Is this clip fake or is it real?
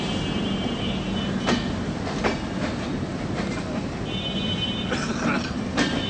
real